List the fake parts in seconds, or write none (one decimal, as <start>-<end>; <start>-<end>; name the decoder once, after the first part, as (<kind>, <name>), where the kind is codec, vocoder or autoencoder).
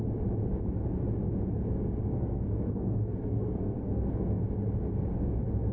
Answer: 2.1-4.4 (codec, SNAC)